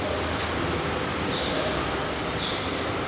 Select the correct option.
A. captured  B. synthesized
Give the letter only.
A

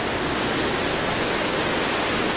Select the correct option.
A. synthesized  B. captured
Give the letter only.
B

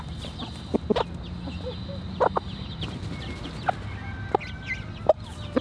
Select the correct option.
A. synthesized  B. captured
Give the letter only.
B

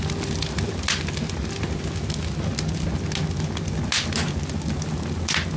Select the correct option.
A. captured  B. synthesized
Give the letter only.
A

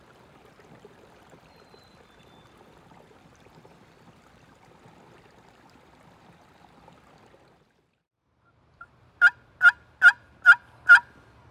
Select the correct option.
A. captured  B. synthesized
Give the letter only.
A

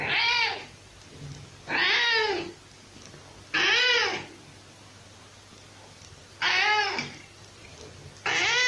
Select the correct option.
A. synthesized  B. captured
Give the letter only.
B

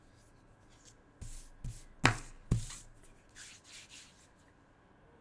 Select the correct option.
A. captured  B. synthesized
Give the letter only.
A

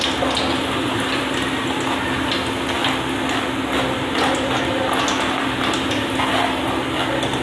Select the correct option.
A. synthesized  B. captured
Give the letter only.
B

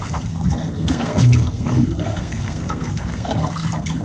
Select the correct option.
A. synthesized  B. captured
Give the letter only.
A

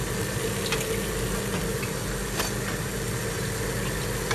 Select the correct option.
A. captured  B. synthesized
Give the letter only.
A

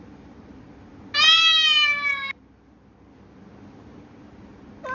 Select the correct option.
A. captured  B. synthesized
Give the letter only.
A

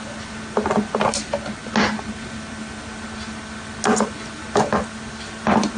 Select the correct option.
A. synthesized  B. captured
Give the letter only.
B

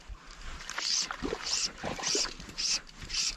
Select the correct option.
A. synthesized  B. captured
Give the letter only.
A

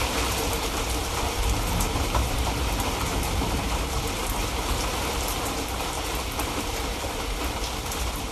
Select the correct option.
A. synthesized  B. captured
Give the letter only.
A